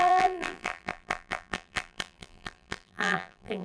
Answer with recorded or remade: remade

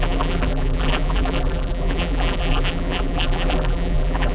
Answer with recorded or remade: remade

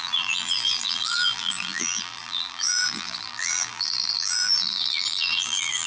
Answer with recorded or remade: remade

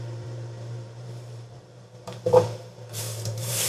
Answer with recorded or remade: remade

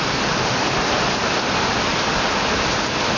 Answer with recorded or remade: remade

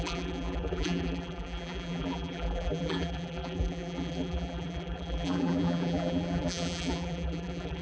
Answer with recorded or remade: remade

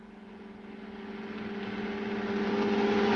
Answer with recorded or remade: recorded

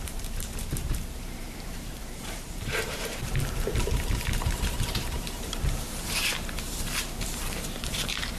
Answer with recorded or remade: remade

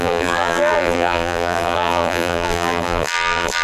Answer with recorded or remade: remade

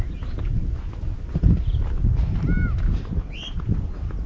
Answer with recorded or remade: recorded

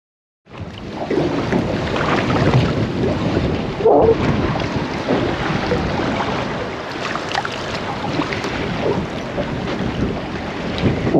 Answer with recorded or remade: recorded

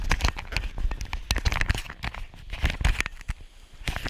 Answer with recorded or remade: recorded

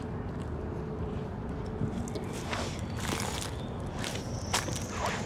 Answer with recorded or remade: recorded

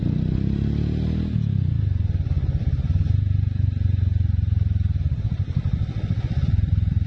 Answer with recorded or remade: recorded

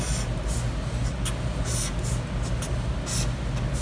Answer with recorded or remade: recorded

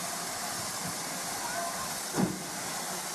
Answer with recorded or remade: recorded